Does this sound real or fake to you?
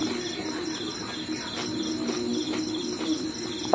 real